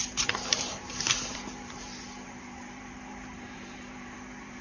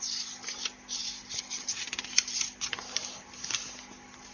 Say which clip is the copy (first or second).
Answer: first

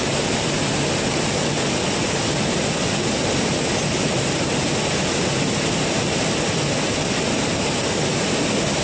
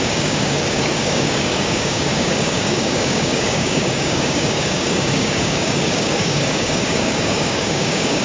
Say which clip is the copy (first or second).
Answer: second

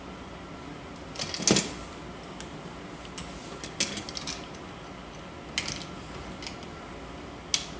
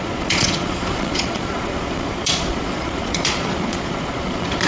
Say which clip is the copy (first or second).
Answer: second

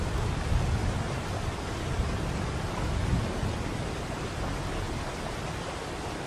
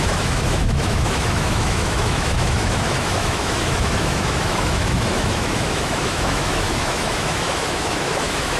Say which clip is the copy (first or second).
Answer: second